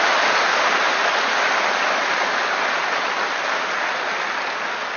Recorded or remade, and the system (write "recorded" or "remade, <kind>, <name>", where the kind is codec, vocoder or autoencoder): recorded